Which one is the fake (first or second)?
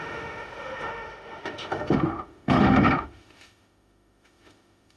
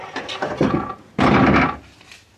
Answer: first